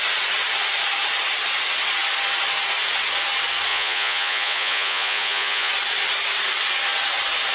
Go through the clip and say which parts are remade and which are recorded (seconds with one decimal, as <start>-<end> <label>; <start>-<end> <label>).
0.0-3.7 recorded; 3.7-5.7 remade; 5.7-7.5 recorded